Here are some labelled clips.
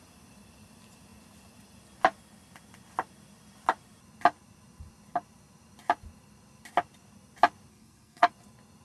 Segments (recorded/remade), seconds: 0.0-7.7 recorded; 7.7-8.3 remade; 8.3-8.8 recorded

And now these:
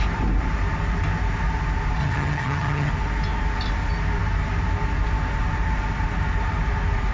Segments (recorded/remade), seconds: 0.0-2.0 recorded; 2.0-2.9 remade; 2.9-7.1 recorded

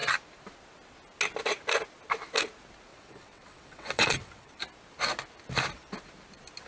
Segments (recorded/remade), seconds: 0.0-2.9 recorded; 2.9-4.6 remade; 4.6-6.7 recorded

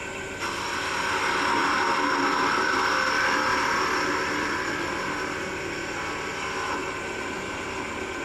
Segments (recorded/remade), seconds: 0.0-1.6 recorded; 1.6-2.8 remade; 2.8-8.2 recorded

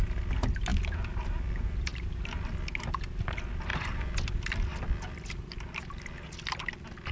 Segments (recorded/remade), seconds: 0.0-1.9 recorded; 1.9-2.5 remade; 2.5-3.7 recorded; 3.7-4.3 remade; 4.3-7.1 recorded

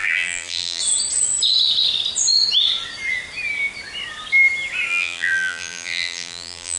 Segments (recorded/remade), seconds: 0.0-0.8 remade; 0.8-4.9 recorded; 4.9-6.8 remade